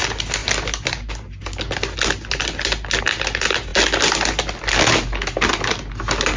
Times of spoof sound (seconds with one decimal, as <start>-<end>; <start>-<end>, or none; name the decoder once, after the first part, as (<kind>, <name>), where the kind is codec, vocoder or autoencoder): none

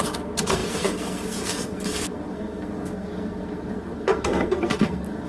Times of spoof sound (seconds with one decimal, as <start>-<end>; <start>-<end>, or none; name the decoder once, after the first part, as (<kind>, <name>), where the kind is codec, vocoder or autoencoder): 0.0-5.3 (codec, SNAC)

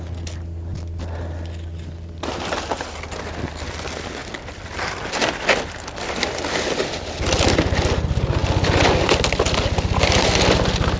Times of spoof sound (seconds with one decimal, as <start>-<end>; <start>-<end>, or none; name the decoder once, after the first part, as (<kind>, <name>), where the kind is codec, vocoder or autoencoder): none

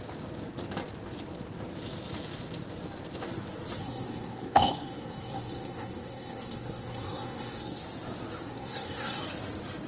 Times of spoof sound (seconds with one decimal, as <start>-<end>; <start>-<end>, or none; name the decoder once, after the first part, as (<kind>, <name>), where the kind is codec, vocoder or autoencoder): 3.8-7.8 (codec, SNAC); 8.5-9.2